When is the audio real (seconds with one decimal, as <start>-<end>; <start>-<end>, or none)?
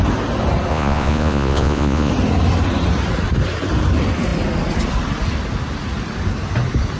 0.0-0.7; 2.1-7.0